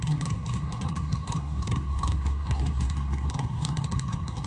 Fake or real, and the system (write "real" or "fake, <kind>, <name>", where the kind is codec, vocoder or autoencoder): fake, codec, SNAC